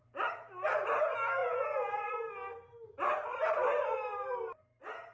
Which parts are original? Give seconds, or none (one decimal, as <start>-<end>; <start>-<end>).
0.0-1.4; 2.1-5.1